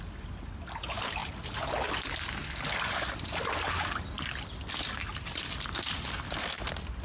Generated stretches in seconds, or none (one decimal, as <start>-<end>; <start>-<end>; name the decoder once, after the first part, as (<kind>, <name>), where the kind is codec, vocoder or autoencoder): none